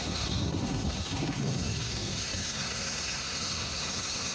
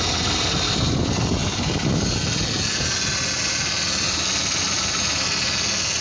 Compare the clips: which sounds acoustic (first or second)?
second